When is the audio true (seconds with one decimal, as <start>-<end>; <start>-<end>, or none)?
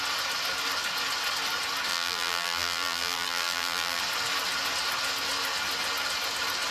0.0-1.9; 4.0-6.7